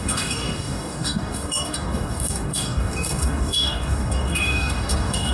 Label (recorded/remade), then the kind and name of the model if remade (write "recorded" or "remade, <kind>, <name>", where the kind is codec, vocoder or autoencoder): remade, codec, DAC